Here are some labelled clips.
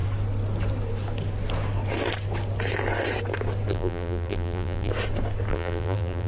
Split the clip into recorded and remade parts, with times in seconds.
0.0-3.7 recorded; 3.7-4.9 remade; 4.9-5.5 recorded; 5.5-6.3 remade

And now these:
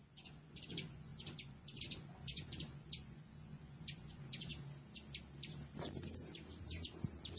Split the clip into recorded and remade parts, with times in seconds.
0.0-4.5 remade; 4.5-7.4 recorded

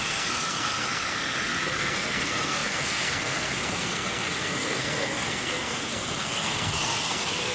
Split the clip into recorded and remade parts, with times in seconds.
0.0-7.5 remade